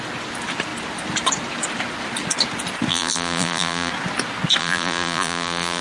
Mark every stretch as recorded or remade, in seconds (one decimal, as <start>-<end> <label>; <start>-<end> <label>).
0.0-2.9 recorded; 2.9-3.9 remade; 3.9-4.6 recorded; 4.6-5.8 remade